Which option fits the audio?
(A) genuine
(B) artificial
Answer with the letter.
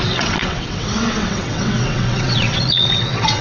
B